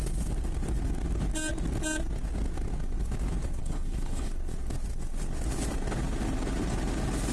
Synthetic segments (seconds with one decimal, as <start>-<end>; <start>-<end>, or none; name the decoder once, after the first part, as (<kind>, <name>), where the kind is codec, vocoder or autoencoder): 3.6-4.3 (codec, HILCodec)